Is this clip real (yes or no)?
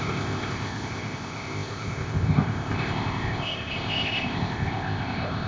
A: no